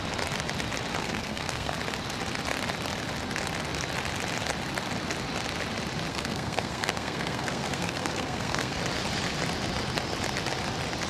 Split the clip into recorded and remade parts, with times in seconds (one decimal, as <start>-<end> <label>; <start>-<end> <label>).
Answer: 0.0-1.0 recorded; 1.0-1.8 remade; 1.8-6.1 recorded; 6.1-8.8 remade; 8.8-11.1 recorded